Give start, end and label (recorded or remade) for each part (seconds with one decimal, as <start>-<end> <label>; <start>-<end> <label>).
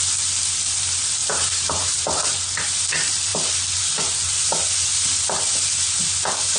0.0-1.2 recorded; 1.2-2.6 remade; 2.6-6.6 recorded